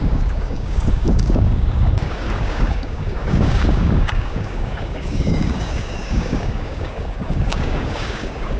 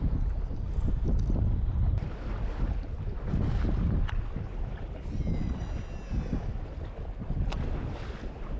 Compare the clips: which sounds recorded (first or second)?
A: second